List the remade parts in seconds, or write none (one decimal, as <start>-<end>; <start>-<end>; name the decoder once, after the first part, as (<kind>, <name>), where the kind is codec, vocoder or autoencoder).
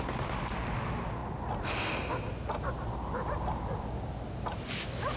none